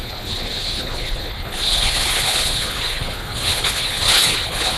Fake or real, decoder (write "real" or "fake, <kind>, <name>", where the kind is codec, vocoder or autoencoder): fake, codec, HILCodec